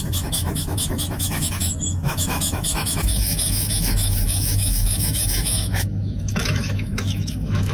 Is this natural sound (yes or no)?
no